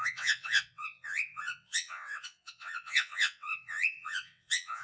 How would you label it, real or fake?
fake